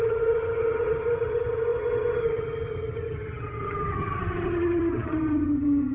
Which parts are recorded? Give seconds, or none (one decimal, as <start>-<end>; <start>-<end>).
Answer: none